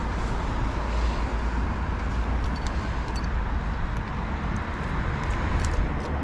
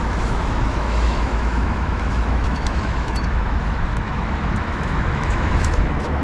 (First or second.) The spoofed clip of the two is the second